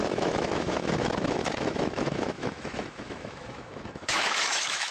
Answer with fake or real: fake